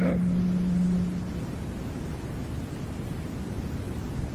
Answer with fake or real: real